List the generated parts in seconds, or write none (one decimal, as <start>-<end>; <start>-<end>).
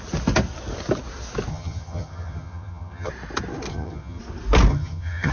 1.5-3.1; 3.7-4.2; 4.7-5.3